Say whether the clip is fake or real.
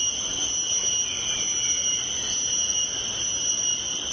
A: real